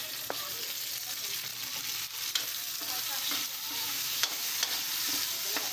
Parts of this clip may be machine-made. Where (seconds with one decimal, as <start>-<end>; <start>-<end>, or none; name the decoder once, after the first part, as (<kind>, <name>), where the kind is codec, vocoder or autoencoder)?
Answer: 3.8-4.5 (autoencoder, DAC-VAE)